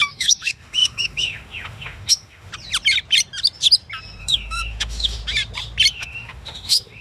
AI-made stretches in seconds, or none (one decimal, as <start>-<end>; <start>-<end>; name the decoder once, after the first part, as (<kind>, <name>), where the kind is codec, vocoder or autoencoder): 0.0-2.5 (autoencoder, DAC-VAE); 4.2-5.2; 5.9-7.0